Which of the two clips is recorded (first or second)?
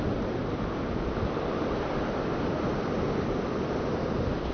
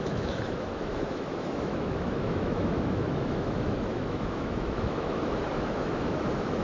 first